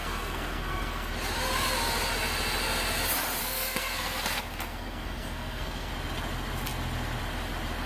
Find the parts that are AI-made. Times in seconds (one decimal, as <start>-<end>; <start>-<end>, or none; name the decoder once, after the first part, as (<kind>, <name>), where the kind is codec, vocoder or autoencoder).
0.0-1.1 (codec, SNAC); 3.4-5.9